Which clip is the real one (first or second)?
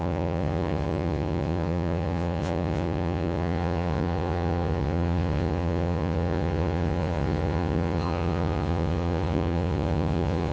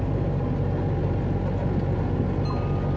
second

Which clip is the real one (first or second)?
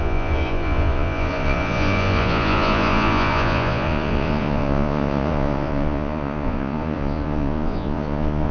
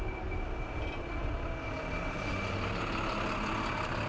second